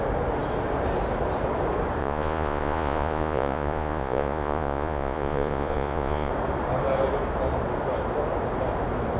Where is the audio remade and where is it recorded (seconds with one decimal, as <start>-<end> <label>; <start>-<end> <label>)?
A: 0.0-2.0 recorded; 2.0-6.3 remade; 6.3-9.2 recorded